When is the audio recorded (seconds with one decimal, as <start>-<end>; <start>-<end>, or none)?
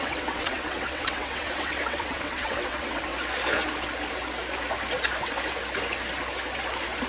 3.1-7.1